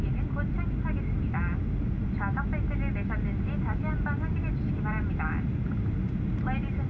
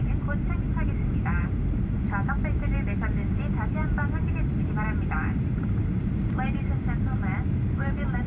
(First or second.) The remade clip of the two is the second